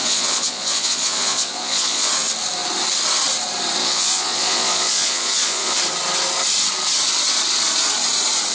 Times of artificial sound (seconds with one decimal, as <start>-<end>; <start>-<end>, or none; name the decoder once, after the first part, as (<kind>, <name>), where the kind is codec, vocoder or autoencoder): 0.0-2.1 (vocoder, Vocos); 3.8-5.8